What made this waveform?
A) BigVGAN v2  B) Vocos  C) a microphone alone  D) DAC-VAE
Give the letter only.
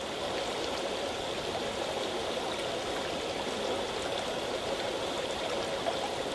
C